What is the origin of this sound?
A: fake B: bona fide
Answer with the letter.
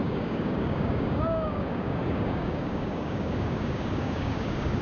A